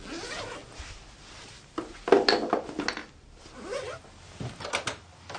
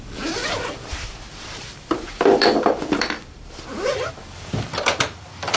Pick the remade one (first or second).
second